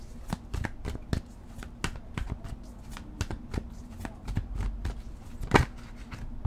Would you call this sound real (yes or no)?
yes